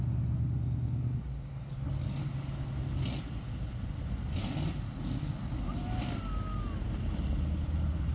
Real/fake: real